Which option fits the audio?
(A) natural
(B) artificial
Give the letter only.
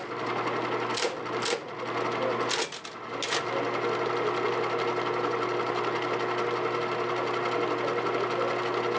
A